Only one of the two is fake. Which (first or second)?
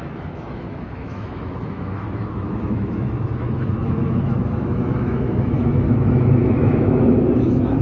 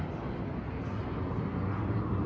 first